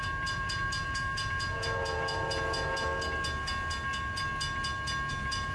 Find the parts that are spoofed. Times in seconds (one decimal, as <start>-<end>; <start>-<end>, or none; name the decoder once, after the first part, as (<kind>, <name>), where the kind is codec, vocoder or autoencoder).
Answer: 0.0-2.9 (vocoder, Vocos); 5.1-5.5